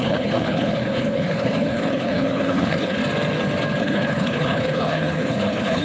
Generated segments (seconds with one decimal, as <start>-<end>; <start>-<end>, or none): 0.0-3.0; 3.8-5.8